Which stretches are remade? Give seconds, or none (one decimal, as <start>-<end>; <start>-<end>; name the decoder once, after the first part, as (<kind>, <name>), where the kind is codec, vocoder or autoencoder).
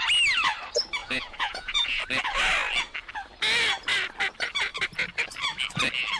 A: 1.0-2.0 (vocoder, Vocos)